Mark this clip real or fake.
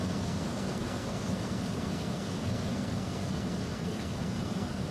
fake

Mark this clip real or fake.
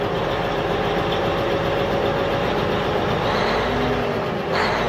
real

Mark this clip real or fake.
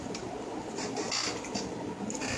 real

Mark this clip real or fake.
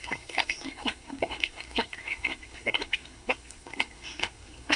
fake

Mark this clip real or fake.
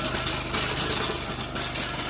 real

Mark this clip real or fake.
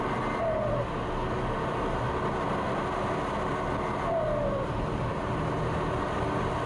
real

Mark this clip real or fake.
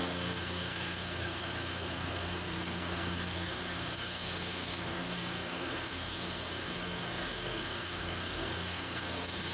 fake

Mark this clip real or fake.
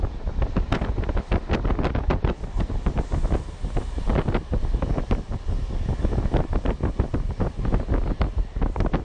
real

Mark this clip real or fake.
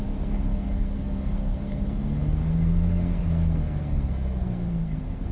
fake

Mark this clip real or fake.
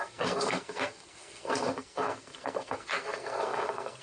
fake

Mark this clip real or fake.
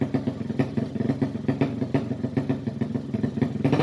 real